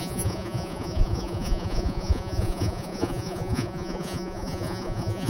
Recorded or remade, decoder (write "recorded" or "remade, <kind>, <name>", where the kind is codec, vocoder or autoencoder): remade, vocoder, Vocos